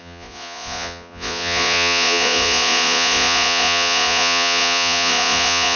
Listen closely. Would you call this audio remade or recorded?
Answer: remade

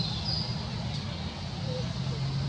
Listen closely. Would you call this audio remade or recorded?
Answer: recorded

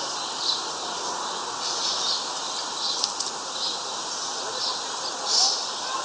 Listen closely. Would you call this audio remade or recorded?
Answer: recorded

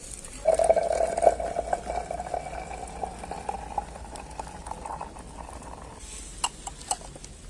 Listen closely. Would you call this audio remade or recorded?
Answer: recorded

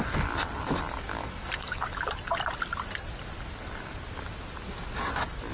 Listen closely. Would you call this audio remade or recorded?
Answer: recorded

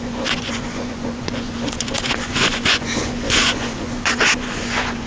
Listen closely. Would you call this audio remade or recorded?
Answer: remade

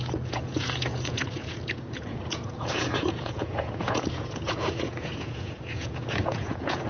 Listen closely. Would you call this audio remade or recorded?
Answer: remade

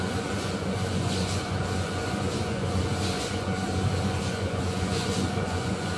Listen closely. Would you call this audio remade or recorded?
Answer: remade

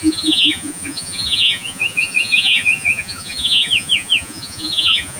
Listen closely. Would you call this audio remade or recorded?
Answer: remade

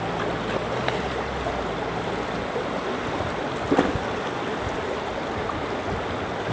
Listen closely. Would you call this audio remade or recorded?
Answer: recorded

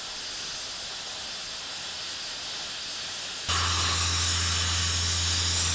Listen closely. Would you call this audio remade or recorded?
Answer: recorded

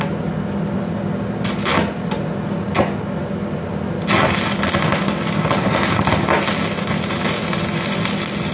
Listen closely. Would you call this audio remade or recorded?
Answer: recorded